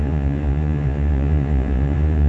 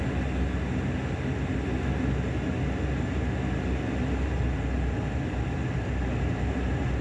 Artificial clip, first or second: first